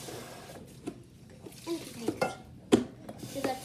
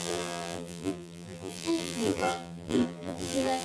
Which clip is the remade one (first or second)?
second